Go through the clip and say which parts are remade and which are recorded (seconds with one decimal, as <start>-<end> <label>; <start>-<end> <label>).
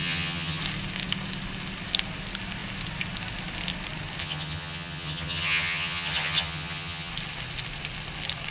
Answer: 0.0-0.6 remade; 0.6-4.2 recorded; 4.2-7.1 remade; 7.1-8.5 recorded